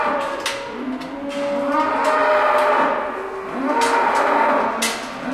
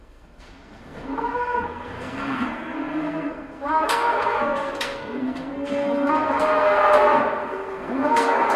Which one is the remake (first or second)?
second